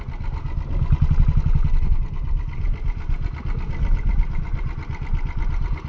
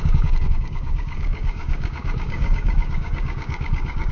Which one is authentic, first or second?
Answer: first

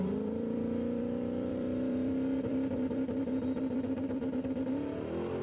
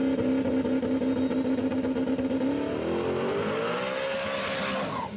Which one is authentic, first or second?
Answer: second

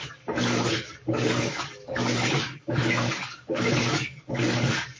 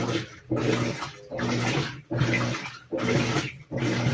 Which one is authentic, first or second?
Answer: second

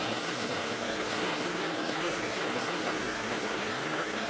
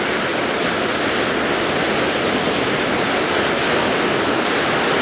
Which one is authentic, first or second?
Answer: second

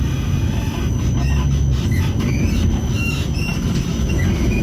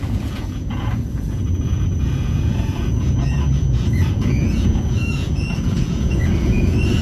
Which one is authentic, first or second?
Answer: first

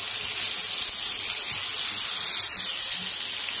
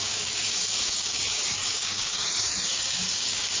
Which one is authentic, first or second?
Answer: first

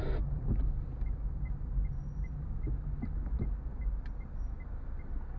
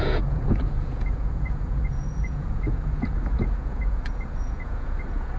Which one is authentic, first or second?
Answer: first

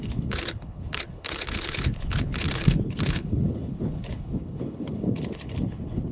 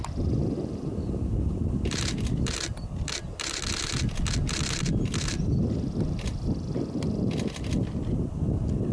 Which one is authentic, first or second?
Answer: second